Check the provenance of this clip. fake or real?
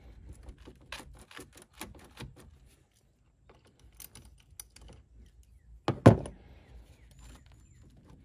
real